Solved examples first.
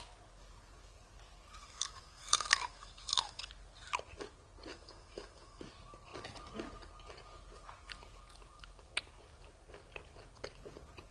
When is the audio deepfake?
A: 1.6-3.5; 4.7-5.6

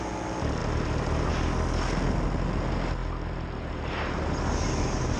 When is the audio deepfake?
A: none